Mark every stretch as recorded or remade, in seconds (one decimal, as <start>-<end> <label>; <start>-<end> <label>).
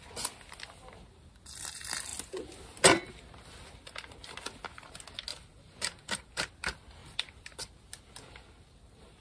0.0-5.3 recorded; 5.3-6.5 remade; 6.5-9.2 recorded